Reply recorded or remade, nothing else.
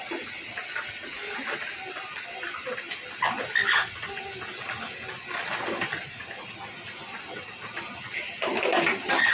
recorded